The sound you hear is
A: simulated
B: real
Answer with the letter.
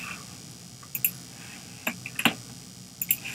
B